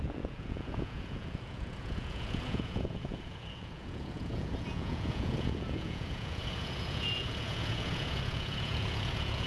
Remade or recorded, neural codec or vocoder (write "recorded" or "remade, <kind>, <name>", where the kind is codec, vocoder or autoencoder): remade, vocoder, Vocos